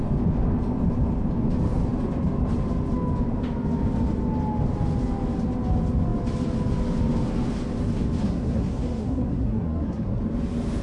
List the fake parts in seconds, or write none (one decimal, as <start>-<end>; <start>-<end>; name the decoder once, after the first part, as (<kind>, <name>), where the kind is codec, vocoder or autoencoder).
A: 8.2-10.2 (codec, SNAC)